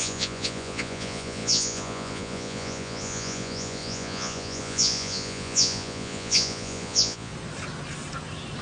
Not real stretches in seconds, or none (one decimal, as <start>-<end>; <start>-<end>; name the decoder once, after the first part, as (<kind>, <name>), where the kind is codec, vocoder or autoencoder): 0.0-7.3 (vocoder, Vocos)